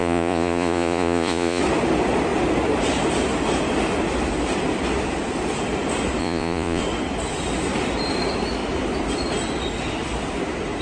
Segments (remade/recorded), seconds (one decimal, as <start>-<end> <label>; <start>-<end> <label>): 0.0-1.6 remade; 1.6-6.2 recorded; 6.2-6.8 remade; 6.8-10.8 recorded